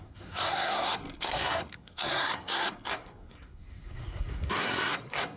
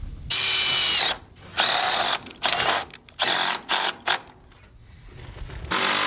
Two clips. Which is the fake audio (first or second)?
first